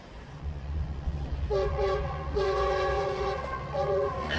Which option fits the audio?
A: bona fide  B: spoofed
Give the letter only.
B